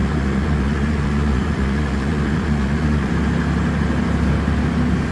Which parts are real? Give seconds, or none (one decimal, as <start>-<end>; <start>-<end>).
3.1-5.1